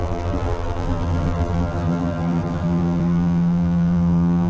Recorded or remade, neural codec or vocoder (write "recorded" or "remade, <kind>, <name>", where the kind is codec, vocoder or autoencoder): remade, vocoder, BigVGAN v2